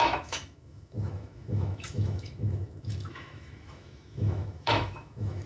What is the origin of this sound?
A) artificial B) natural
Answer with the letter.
A